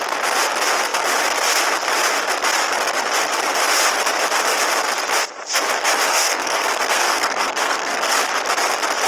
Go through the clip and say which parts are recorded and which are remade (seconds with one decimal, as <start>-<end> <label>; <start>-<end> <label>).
0.0-6.1 recorded; 6.1-8.2 remade; 8.2-9.1 recorded